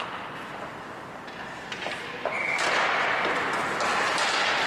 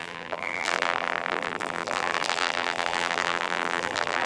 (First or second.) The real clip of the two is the first